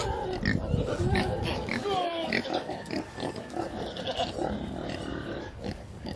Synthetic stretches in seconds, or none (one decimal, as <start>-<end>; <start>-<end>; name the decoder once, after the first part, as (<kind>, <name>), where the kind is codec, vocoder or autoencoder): 1.1-4.0 (codec, DAC); 5.1-6.2